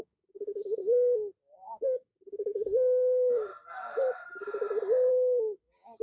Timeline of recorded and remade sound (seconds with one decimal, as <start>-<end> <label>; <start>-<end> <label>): 0.0-0.8 remade; 0.8-1.5 recorded; 1.5-3.5 remade; 3.5-5.1 recorded; 5.1-6.0 remade